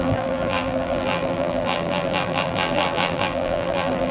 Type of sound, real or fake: fake